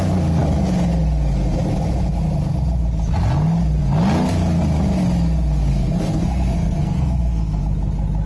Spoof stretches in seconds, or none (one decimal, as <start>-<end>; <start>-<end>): 5.7-7.6